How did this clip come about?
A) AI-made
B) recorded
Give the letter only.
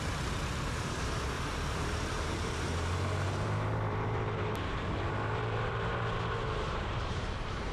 A